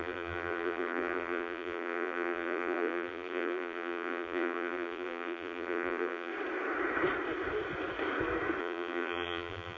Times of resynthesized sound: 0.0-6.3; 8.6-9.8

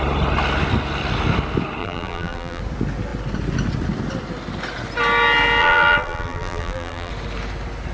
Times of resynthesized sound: 1.8-2.6; 5.6-7.1

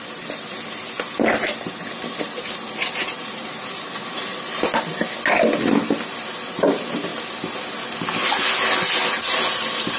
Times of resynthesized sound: 0.0-7.1; 9.5-10.0

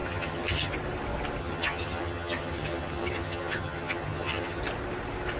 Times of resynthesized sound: 0.0-0.7; 1.4-4.6

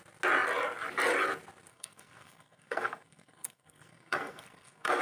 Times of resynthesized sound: 1.7-5.0

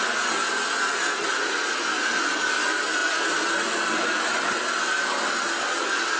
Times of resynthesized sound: none

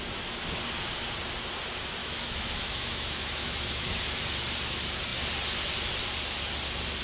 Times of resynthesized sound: 2.0-4.0